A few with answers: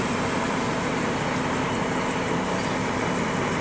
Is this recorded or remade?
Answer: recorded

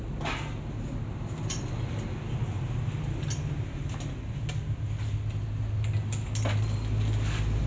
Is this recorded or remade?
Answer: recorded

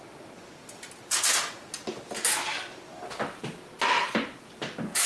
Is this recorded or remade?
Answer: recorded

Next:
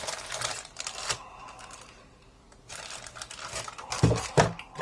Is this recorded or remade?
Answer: recorded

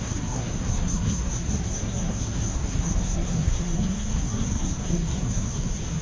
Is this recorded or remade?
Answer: remade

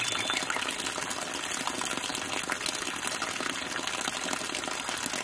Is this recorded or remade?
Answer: recorded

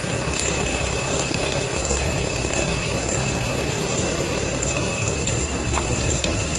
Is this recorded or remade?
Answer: remade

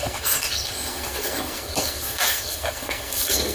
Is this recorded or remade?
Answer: remade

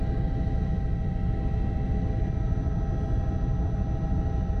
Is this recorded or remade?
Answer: recorded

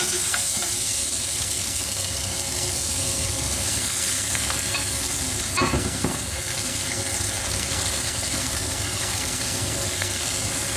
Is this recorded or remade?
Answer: remade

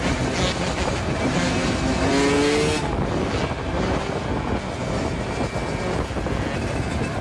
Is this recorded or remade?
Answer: recorded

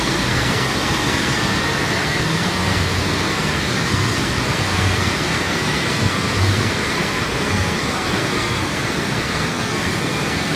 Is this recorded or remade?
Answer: remade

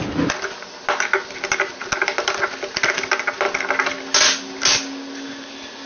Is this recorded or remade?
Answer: recorded